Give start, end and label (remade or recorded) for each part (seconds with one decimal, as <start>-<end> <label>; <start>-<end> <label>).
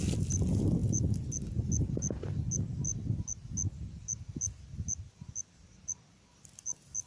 0.0-7.1 recorded